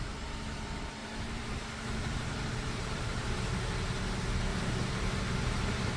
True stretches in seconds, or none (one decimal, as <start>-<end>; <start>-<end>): 0.0-1.0; 3.9-4.5